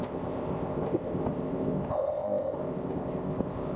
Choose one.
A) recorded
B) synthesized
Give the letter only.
B